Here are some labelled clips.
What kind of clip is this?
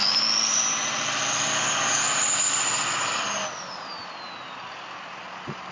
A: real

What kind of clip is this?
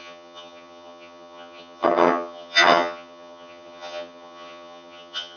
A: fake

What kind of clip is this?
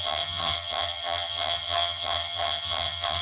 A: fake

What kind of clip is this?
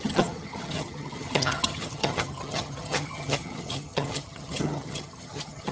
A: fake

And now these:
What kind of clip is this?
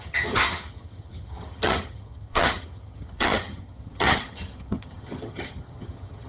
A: fake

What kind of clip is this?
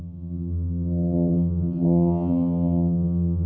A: fake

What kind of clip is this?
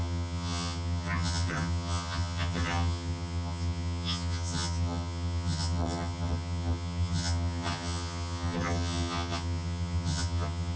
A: fake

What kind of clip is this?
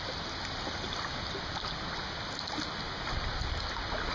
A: real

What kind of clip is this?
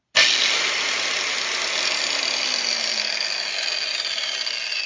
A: real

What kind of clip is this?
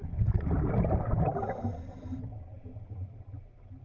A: real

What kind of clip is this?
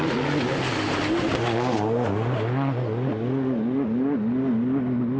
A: real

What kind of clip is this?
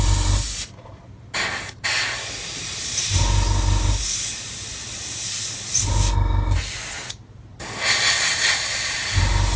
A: real